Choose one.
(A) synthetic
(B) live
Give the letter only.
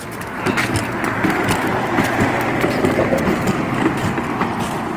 B